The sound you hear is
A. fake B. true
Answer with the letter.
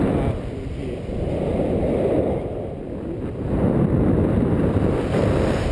A